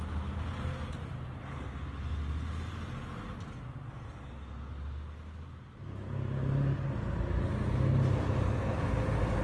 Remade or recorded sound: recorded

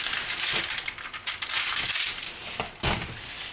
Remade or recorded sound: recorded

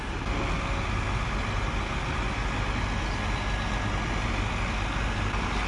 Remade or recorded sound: recorded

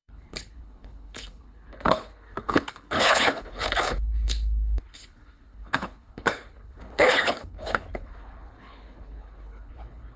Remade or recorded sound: remade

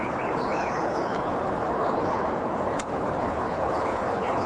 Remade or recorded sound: remade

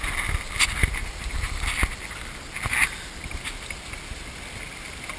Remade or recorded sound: recorded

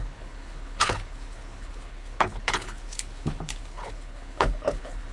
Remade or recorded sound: remade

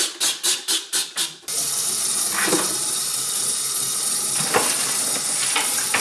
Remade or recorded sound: recorded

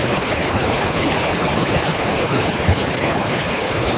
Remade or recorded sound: remade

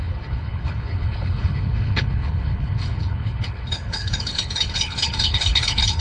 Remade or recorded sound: remade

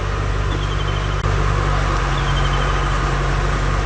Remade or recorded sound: recorded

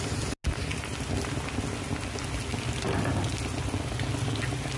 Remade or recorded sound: recorded